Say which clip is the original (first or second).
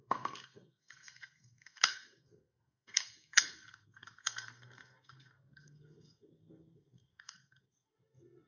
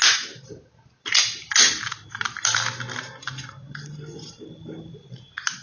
second